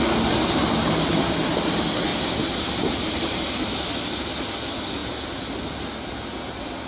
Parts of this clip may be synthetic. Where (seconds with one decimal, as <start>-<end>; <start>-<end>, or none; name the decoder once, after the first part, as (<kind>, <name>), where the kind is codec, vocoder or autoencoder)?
2.1-3.7 (vocoder, BigVGAN v2)